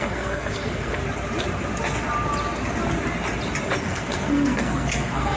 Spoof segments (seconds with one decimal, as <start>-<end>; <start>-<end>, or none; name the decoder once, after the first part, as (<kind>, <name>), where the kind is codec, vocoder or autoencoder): 0.0-1.0 (codec, SNAC); 3.8-5.4